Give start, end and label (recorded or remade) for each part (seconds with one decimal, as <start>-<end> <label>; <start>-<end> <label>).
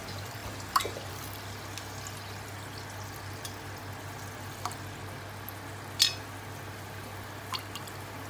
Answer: 0.0-8.3 recorded